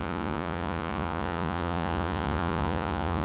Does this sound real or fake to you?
fake